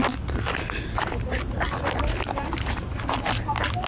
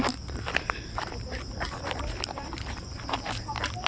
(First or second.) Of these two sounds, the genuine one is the first